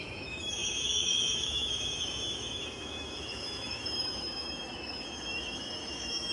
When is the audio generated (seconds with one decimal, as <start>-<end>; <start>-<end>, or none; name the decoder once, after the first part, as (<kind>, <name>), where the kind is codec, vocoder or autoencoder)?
0.0-6.3 (autoencoder, DAC-VAE)